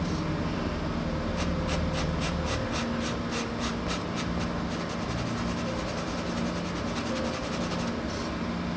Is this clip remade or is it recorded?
recorded